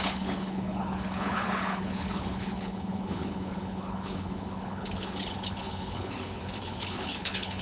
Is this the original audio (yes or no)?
no